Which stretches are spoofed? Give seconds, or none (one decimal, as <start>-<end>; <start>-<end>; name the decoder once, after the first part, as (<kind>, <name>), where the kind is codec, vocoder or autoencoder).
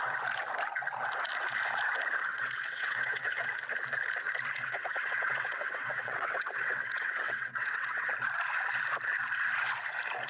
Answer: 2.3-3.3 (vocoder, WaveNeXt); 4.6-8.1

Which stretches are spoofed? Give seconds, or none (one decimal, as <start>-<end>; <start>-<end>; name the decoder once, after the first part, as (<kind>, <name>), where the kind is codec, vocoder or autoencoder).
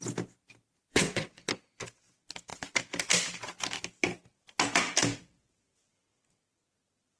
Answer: 0.9-1.5 (vocoder, WaveNeXt)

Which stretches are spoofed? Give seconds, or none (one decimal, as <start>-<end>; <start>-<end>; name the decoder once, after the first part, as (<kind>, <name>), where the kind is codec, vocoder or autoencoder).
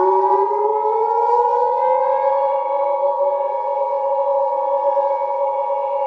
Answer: 0.0-6.1 (vocoder, WaveNeXt)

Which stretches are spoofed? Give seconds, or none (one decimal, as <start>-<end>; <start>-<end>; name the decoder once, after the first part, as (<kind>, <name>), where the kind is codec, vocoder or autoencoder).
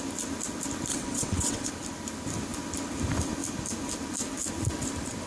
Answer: 0.9-1.7 (vocoder, WaveNeXt)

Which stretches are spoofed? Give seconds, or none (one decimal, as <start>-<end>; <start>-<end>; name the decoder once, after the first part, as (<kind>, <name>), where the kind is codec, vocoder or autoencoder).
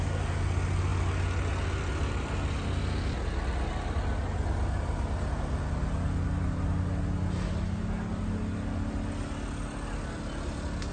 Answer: none